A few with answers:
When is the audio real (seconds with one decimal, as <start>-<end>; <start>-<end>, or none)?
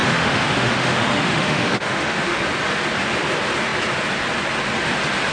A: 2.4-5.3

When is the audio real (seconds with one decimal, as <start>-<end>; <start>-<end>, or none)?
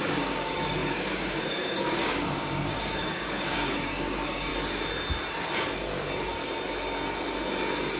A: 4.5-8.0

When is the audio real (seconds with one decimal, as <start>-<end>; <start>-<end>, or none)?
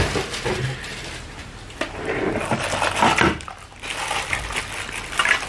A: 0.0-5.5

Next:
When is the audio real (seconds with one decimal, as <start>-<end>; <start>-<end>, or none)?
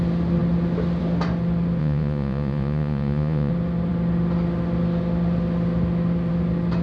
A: 0.0-1.8; 3.5-6.8